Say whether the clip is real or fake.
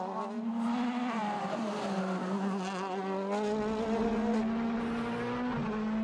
real